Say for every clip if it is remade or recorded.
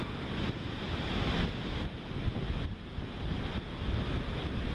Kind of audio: recorded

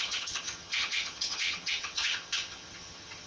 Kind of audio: remade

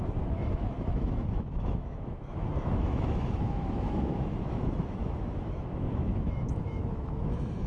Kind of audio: remade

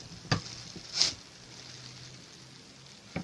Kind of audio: recorded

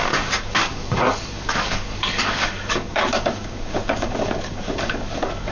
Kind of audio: remade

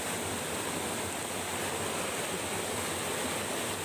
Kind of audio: recorded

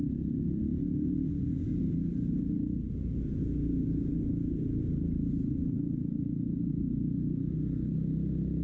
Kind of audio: recorded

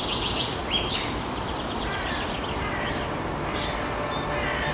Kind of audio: recorded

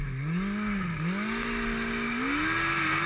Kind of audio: recorded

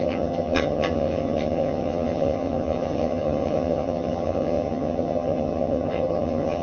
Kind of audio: remade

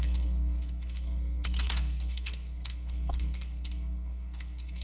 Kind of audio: remade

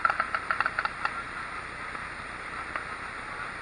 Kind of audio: recorded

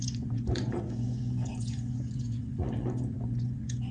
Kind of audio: remade